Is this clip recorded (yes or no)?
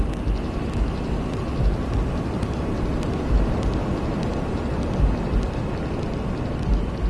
yes